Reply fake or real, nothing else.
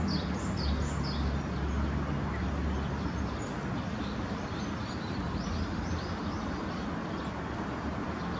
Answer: real